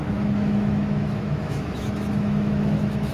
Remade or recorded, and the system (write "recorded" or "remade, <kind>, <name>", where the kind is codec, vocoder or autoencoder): remade, autoencoder, DAC-VAE